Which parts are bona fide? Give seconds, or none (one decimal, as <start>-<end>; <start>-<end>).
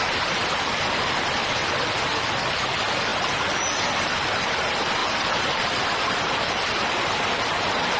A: 1.4-2.0; 5.0-6.3